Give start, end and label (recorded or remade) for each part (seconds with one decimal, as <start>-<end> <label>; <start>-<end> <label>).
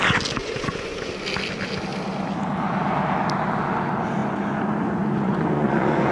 0.0-0.4 recorded; 0.4-1.1 remade; 1.1-4.2 recorded; 4.2-6.1 remade